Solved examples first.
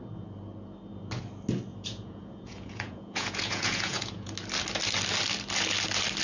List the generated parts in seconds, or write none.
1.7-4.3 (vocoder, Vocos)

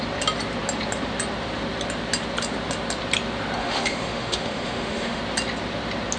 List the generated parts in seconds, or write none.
3.6-5.2 (autoencoder, DAC-VAE)

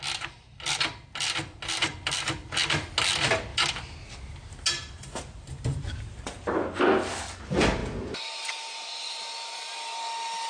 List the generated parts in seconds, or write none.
none

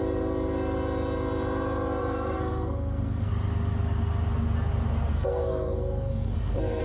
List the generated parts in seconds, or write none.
2.0-3.3 (codec, SNAC); 5.1-6.8